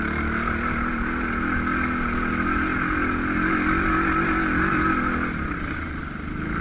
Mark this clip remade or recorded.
recorded